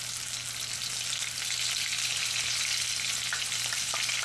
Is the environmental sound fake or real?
real